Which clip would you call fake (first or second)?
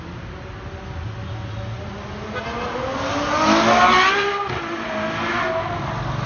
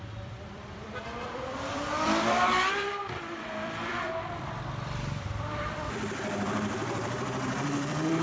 second